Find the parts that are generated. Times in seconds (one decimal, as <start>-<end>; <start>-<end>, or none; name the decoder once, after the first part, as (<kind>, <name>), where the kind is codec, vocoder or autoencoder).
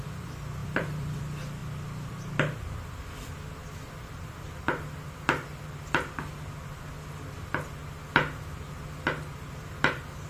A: 0.6-1.2 (vocoder, BigVGAN v2)